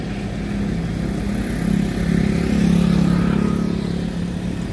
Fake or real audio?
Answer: real